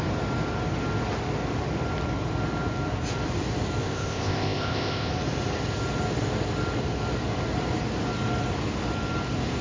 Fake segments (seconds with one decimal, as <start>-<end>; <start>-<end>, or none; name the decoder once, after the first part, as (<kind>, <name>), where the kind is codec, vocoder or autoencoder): 3.8-5.1 (codec, ZipCodec)